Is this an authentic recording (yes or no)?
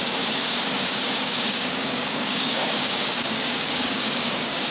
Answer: no